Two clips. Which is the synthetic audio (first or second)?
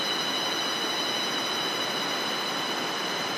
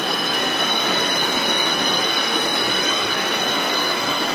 second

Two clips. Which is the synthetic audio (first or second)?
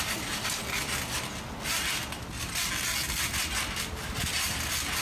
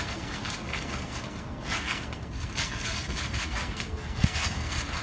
second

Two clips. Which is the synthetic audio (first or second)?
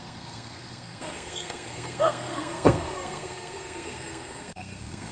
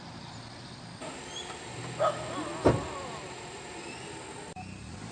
first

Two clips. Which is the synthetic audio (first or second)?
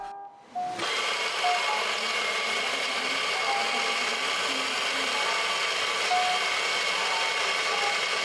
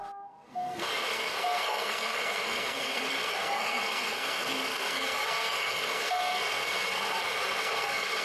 second